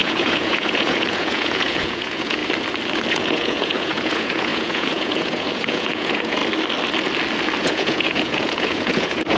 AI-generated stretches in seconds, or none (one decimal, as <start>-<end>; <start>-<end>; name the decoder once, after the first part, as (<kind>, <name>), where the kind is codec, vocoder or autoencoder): 0.0-2.4 (vocoder, Vocos); 3.1-6.4; 7.6-9.4